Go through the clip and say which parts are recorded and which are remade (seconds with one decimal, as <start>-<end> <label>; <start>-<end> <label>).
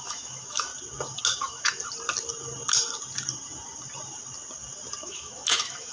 0.0-0.7 remade; 0.7-1.4 recorded; 1.4-1.8 remade; 1.8-5.0 recorded; 5.0-5.9 remade